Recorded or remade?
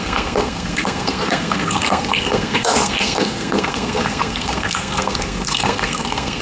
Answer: remade